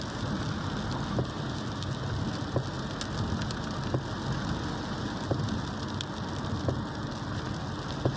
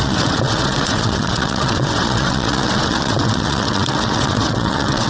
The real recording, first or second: first